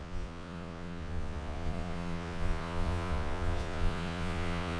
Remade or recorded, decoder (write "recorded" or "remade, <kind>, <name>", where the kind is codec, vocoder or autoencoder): remade, vocoder, Vocos